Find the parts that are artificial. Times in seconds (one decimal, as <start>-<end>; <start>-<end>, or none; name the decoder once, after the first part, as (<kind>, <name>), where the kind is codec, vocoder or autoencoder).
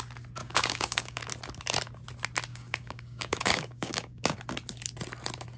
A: 0.4-1.2 (codec, DAC); 2.5-4.4